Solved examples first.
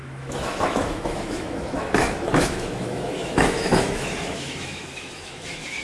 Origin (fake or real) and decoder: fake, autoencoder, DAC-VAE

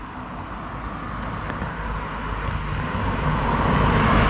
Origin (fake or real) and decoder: real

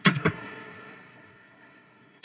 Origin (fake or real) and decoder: fake, codec, SNAC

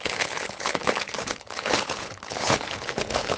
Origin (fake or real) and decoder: fake, codec, HILCodec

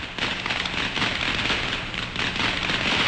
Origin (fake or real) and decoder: real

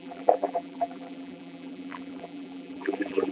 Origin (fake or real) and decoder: fake, vocoder, BigVGAN v2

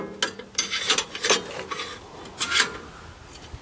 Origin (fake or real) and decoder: real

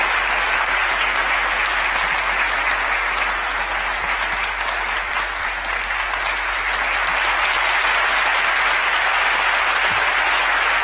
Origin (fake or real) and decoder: real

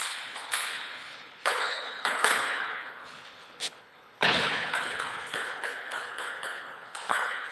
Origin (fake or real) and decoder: fake, codec, HILCodec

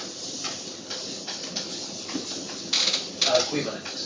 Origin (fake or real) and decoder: real